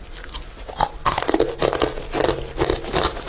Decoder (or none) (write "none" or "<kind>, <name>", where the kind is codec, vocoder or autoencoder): none